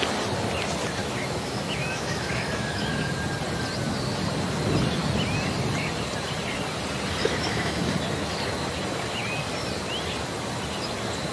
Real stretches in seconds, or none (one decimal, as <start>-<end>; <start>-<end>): 0.0-1.0; 3.1-7.2; 7.9-11.3